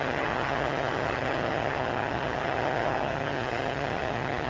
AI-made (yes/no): yes